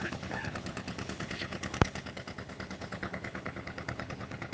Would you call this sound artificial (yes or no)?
yes